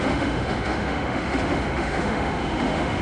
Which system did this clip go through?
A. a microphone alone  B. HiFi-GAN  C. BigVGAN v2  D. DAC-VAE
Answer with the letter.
D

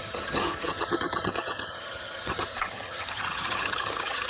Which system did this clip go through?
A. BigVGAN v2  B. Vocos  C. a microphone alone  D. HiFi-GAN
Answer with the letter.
D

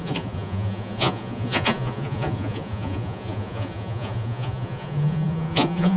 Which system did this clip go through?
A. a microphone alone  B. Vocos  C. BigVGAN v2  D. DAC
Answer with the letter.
B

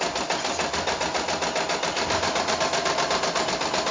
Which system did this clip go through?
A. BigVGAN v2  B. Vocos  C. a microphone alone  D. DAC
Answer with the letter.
C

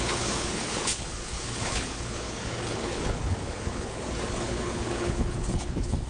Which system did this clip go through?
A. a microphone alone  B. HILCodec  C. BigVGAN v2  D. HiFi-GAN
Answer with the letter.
B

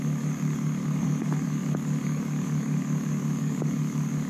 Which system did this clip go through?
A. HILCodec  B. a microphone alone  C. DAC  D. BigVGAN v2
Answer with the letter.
C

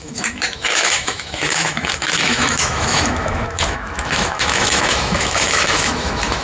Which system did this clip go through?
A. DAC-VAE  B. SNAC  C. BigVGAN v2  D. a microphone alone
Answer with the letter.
A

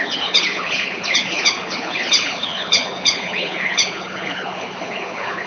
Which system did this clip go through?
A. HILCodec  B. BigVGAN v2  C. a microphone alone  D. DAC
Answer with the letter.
A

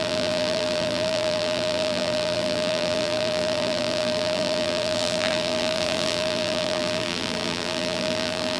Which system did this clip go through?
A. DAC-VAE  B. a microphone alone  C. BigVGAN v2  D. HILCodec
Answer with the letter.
C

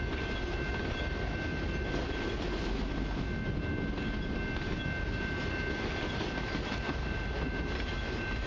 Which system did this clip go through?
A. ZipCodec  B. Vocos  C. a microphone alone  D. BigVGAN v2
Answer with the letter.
C